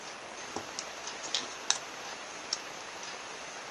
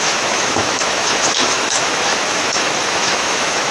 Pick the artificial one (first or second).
second